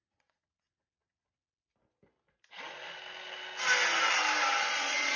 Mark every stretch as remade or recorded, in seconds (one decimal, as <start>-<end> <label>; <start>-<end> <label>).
0.0-1.6 remade; 1.6-4.6 recorded; 4.6-5.2 remade